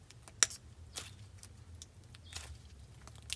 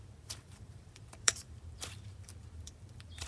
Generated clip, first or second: second